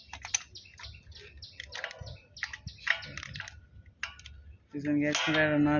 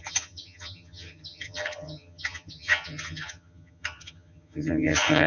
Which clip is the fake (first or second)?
second